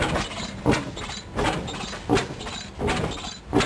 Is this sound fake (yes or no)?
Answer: no